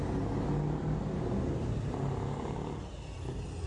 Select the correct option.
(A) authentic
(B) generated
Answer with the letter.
A